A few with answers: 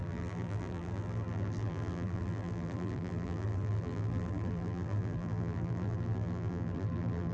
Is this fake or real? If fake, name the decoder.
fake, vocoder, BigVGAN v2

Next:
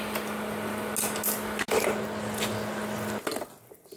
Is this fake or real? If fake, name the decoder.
real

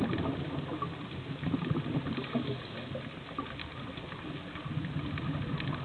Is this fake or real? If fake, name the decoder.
real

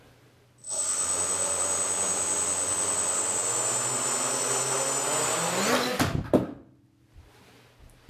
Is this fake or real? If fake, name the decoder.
real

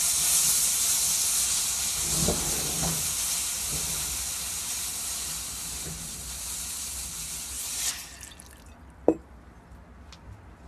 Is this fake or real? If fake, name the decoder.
real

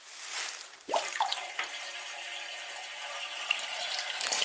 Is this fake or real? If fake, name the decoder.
fake, vocoder, BigVGAN v2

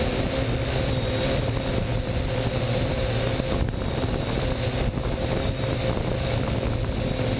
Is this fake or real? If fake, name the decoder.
real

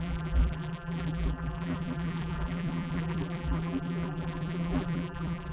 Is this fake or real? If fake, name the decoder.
fake, vocoder, BigVGAN v2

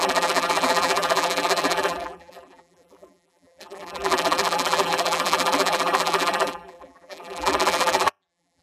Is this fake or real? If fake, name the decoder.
fake, vocoder, BigVGAN v2